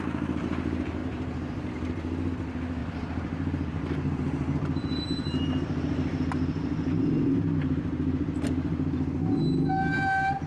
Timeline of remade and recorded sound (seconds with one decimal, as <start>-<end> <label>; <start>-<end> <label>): 0.0-1.0 recorded; 1.0-1.7 remade; 1.7-2.8 recorded; 2.8-5.0 remade; 5.0-10.5 recorded